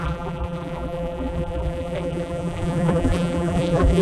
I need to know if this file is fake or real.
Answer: fake